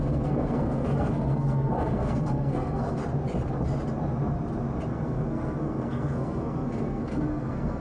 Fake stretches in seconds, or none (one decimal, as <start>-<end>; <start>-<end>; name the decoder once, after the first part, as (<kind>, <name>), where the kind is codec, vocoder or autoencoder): 0.0-3.0 (codec, SNAC); 4.9-7.8